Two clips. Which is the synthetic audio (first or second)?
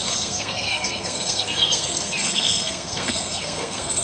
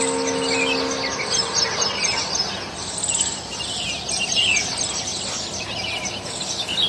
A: first